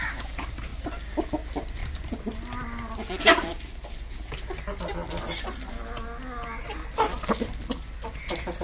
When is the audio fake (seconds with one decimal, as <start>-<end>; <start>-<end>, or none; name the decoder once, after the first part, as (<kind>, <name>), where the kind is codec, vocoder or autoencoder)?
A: none